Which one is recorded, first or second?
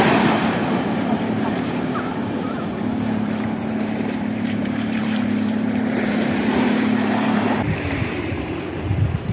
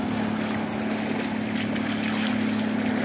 second